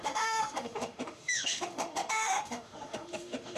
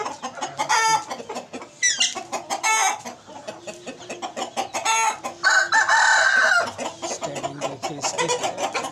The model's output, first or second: first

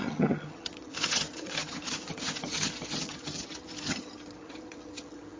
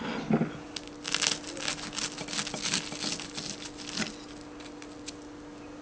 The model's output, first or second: first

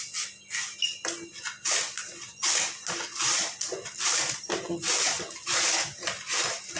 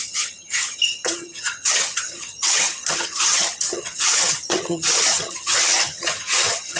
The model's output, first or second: second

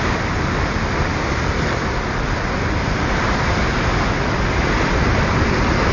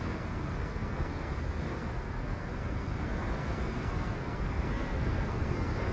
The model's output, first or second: second